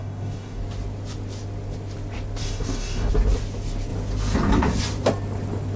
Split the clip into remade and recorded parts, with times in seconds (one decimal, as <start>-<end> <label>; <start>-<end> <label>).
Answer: 0.0-0.6 remade; 0.6-2.4 recorded; 2.4-3.1 remade; 3.1-5.8 recorded